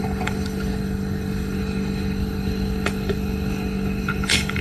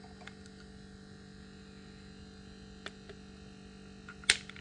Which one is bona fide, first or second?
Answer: second